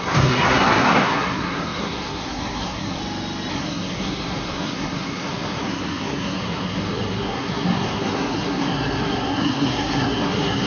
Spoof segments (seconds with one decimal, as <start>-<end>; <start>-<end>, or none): 0.0-3.0; 3.5-10.7